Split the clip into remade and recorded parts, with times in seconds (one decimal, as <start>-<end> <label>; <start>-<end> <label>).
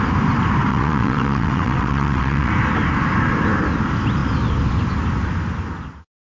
0.0-0.7 recorded; 0.7-2.5 remade; 2.5-6.3 recorded